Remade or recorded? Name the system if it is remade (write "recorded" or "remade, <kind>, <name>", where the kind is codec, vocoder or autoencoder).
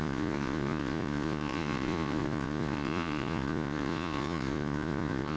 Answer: remade, vocoder, Vocos